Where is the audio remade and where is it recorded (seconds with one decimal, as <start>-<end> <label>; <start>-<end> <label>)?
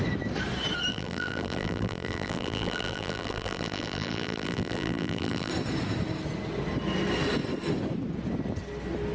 0.0-0.9 recorded; 0.9-5.5 remade; 5.5-9.1 recorded